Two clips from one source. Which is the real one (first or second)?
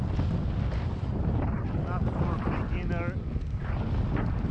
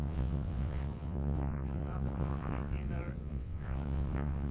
first